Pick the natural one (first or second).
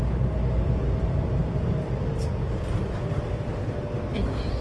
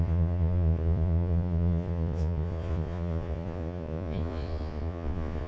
first